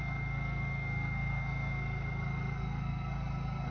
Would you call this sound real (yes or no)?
no